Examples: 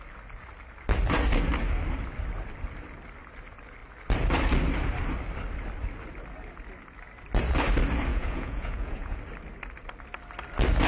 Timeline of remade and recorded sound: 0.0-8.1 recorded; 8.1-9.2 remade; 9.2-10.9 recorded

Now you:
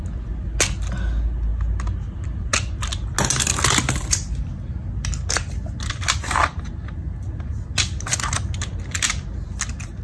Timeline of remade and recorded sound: 0.0-10.0 recorded

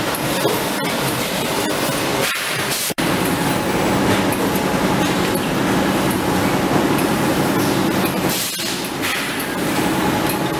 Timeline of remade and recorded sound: 0.0-2.1 recorded; 2.1-3.4 remade; 3.4-10.6 recorded

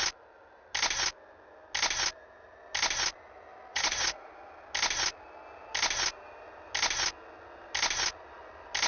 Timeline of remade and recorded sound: 0.0-3.7 recorded; 3.7-4.3 remade; 4.3-8.9 recorded